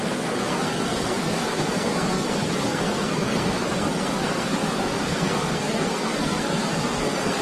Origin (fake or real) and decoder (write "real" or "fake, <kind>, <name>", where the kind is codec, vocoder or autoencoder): fake, codec, SNAC